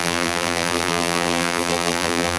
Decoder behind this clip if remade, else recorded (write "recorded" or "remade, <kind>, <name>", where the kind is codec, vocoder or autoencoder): remade, vocoder, BigVGAN v2